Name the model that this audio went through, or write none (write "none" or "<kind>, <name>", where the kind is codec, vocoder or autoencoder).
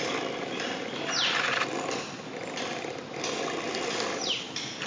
none